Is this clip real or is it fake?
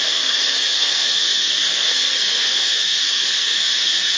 fake